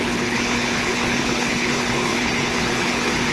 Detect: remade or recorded remade